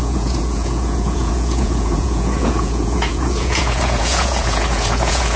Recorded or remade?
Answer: remade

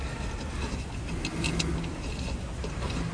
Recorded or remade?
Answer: recorded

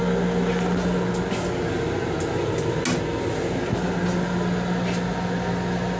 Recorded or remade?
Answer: recorded